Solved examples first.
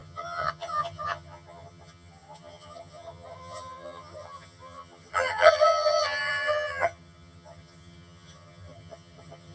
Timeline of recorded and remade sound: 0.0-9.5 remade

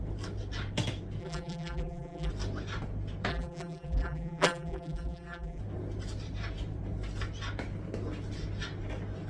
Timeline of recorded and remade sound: 0.0-1.2 recorded; 1.2-2.3 remade; 2.3-3.3 recorded; 3.3-5.6 remade; 5.6-9.3 recorded